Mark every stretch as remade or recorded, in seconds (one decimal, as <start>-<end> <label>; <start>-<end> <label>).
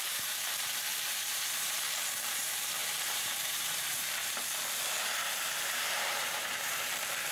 0.0-7.3 remade